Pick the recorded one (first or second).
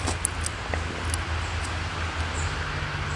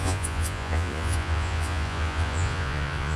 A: first